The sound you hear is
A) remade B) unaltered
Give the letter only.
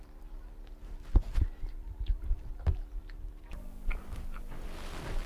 A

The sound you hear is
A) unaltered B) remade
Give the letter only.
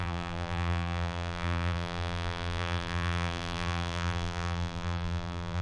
B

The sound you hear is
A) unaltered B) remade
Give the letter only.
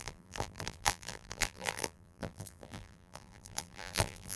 B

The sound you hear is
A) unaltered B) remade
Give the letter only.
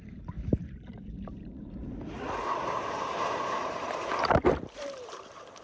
B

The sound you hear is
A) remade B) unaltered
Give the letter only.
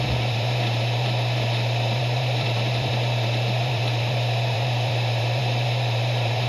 A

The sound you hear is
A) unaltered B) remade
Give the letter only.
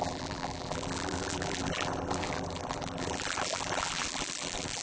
B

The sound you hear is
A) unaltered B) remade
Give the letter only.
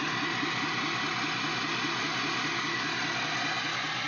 A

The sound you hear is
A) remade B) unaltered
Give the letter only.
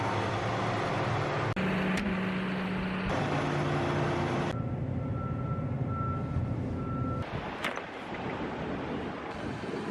B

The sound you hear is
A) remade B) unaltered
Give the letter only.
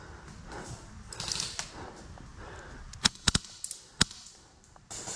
B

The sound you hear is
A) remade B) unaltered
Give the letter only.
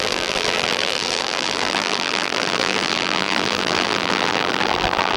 A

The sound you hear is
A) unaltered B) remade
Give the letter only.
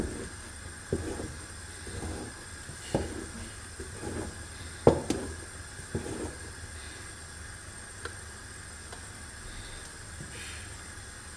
A